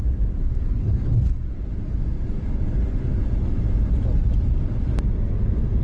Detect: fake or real fake